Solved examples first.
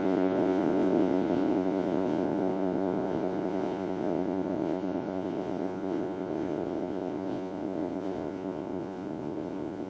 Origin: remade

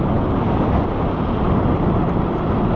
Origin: recorded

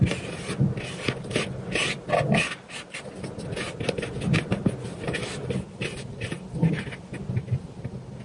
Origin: recorded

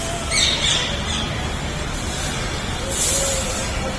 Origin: recorded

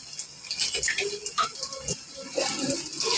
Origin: recorded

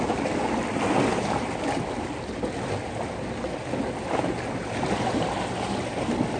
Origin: recorded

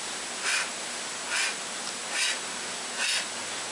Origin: recorded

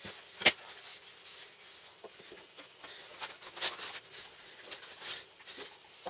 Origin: recorded